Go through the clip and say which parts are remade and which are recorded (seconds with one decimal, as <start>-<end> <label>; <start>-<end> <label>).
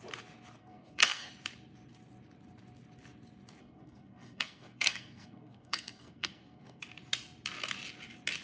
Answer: 0.0-0.6 recorded; 0.6-1.3 remade; 1.3-3.6 recorded; 3.6-6.8 remade; 6.8-8.4 recorded